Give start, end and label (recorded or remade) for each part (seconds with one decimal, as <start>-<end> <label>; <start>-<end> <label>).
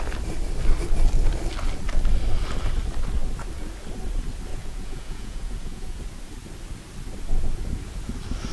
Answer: 0.0-4.5 recorded; 4.5-6.0 remade; 6.0-8.5 recorded